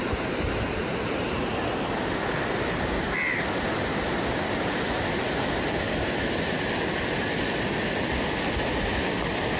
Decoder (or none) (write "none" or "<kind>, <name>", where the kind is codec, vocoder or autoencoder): none